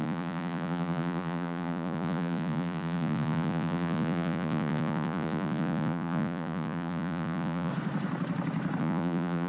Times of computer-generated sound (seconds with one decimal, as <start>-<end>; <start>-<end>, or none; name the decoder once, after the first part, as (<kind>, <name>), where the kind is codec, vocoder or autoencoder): 0.0-7.7 (vocoder, Vocos); 8.8-9.5